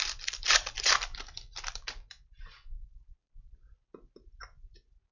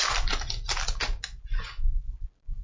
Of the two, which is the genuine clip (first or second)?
second